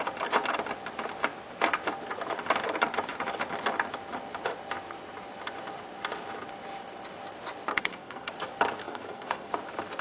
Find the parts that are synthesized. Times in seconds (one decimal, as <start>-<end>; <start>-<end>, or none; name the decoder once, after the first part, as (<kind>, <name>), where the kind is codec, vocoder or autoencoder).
7.7-8.3 (codec, SNAC); 8.8-9.5